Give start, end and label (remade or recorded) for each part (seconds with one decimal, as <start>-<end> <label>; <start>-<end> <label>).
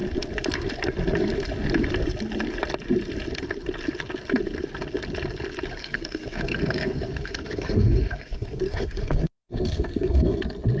0.0-5.8 recorded; 5.8-10.4 remade; 10.4-10.8 recorded